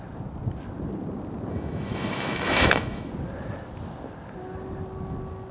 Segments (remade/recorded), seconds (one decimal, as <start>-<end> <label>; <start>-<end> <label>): 0.0-1.5 recorded; 1.5-3.1 remade; 3.1-5.5 recorded